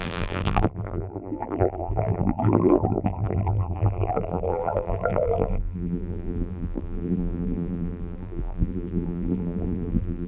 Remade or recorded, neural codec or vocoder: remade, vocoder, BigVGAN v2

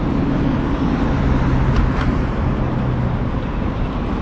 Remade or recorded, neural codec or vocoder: recorded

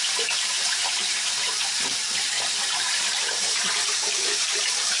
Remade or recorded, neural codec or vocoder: remade, vocoder, BigVGAN v2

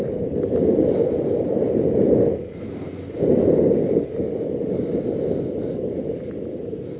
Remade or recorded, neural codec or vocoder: recorded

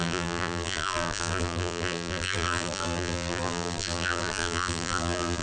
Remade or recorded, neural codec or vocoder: remade, vocoder, BigVGAN v2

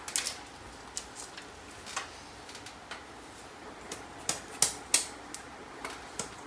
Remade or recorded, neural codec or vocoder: recorded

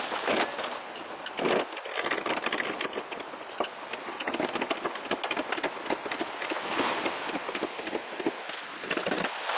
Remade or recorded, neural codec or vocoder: recorded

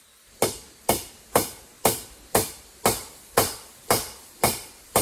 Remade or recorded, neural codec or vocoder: remade, vocoder, BigVGAN v2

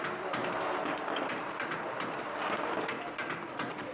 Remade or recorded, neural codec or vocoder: recorded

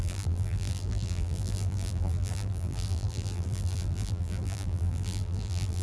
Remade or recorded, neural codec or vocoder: remade, vocoder, BigVGAN v2